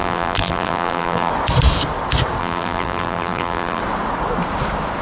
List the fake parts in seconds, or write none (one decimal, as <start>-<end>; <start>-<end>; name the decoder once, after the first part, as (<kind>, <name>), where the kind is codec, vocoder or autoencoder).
0.0-1.3 (vocoder, BigVGAN v2); 2.4-3.8